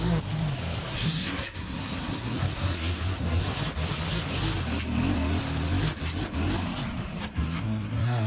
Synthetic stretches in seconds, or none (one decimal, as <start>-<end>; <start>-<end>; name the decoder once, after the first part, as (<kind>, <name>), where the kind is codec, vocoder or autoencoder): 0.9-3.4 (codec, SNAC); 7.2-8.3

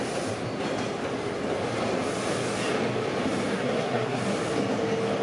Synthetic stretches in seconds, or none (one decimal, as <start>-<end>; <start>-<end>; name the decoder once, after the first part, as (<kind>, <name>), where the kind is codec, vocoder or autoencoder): 3.5-4.2 (codec, SNAC)

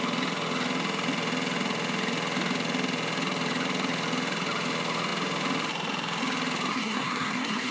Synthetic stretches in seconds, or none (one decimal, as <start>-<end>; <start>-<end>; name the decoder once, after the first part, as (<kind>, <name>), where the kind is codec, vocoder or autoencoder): 6.7-7.7 (codec, SNAC)

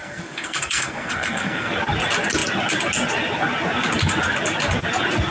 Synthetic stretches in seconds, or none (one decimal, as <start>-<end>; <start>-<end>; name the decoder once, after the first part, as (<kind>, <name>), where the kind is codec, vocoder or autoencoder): 0.0-1.7 (codec, SNAC)

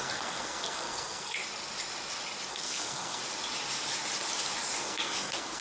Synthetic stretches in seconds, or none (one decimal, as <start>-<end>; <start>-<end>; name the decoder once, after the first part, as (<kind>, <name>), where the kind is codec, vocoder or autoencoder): 0.0-1.4 (codec, SNAC); 2.5-3.2; 4.8-5.6

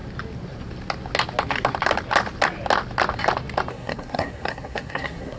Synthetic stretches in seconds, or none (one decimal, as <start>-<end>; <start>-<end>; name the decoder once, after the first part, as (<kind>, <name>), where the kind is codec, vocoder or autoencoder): 3.7-5.4 (codec, SNAC)

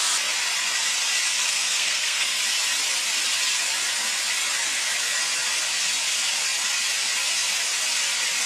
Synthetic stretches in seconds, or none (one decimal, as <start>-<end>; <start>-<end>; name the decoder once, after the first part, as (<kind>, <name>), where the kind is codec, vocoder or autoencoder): 1.4-2.4 (codec, SNAC)

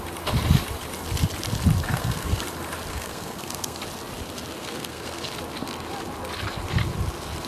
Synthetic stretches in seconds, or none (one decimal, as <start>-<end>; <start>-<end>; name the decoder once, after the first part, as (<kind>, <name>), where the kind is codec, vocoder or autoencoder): 1.9-2.4 (codec, SNAC); 2.9-3.8; 4.6-5.3